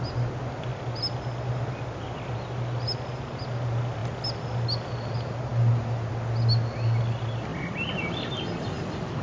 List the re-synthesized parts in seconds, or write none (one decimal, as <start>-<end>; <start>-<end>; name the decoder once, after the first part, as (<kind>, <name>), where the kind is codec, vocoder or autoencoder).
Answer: none

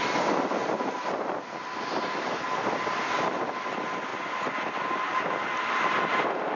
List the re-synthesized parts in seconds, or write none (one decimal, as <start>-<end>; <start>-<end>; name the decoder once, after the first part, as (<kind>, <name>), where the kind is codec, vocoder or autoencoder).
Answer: none

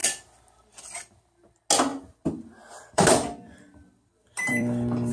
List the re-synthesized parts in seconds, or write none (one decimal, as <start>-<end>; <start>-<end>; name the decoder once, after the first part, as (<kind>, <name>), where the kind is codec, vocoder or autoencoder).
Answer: 1.9-5.1 (vocoder, BigVGAN v2)

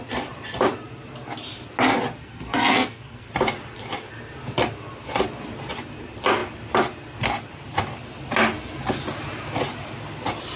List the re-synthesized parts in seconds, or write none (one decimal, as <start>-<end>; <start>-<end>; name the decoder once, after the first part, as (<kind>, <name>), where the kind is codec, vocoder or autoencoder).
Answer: 2.2-3.3 (codec, SNAC)

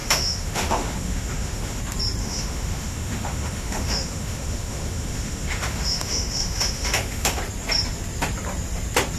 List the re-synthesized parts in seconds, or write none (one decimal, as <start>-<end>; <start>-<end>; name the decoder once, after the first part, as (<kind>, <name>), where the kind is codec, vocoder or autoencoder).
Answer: 0.0-1.8 (autoencoder, DAC-VAE); 2.2-7.4

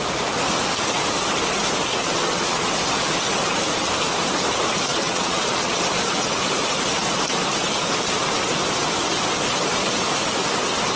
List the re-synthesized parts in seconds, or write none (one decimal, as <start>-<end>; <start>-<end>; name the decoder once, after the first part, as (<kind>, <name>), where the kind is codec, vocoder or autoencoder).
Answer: 2.0-2.7 (vocoder, Vocos); 4.9-5.8